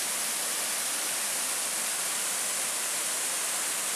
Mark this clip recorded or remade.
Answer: remade